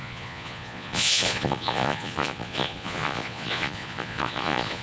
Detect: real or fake fake